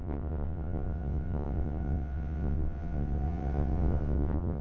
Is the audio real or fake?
fake